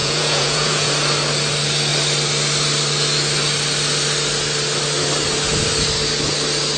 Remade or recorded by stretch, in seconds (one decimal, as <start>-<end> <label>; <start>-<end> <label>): 0.0-0.9 remade; 0.9-6.8 recorded